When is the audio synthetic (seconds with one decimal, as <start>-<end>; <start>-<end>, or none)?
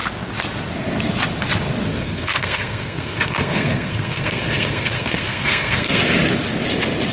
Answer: 1.9-6.0